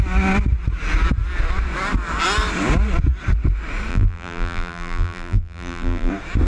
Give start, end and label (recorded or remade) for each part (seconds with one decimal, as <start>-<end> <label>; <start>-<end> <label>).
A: 0.0-3.9 recorded; 3.9-6.1 remade; 6.1-6.5 recorded